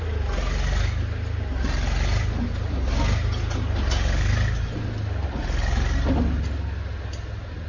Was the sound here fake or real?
real